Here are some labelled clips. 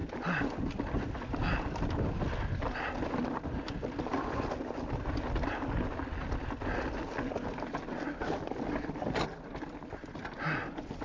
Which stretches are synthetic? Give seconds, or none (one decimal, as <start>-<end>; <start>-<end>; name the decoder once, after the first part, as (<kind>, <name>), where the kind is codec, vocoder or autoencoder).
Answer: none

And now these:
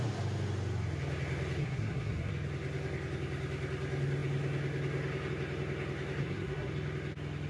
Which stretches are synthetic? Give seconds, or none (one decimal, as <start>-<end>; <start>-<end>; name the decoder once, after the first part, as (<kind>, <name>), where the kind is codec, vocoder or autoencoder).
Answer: 1.6-2.3 (codec, SNAC); 6.2-6.7

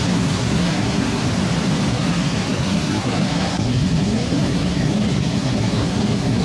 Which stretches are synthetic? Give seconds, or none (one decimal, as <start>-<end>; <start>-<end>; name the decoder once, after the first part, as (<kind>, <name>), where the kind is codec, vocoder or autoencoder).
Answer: 0.0-1.2 (codec, SNAC); 1.9-6.4